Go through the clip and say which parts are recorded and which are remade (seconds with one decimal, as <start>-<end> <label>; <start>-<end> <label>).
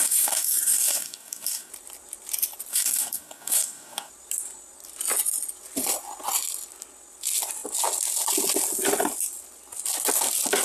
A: 0.0-1.7 remade; 1.7-2.7 recorded; 2.7-4.1 remade; 4.1-10.6 recorded